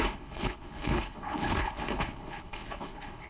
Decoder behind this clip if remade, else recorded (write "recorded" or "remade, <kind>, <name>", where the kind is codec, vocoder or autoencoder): remade, codec, HILCodec